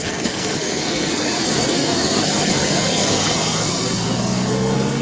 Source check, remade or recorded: remade